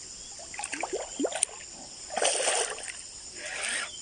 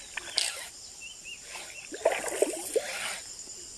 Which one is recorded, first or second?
first